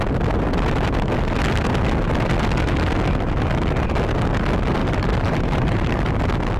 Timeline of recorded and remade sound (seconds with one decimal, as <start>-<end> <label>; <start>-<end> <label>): 0.0-4.8 recorded; 4.8-6.0 remade; 6.0-6.6 recorded